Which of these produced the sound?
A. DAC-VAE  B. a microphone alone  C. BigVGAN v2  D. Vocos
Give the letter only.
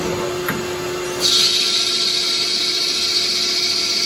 B